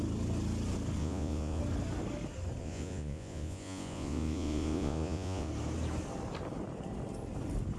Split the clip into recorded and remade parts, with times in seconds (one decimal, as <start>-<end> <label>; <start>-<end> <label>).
0.0-1.0 recorded; 1.0-1.6 remade; 1.6-2.6 recorded; 2.6-5.5 remade; 5.5-7.8 recorded